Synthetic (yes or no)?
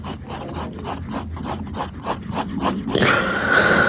no